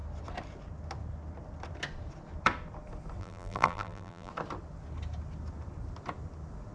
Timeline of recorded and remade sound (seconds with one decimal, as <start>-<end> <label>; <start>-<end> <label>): 0.0-3.2 recorded; 3.2-4.3 remade; 4.3-6.7 recorded